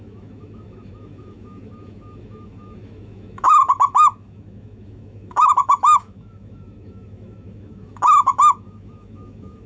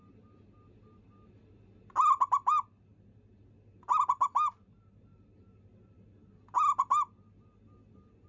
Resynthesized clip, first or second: first